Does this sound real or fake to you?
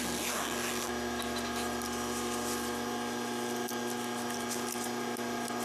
real